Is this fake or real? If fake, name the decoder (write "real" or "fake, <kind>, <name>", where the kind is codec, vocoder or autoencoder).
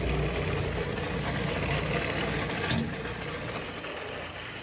real